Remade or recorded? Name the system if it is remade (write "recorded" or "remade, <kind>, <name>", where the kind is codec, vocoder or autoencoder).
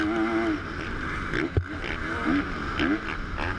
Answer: recorded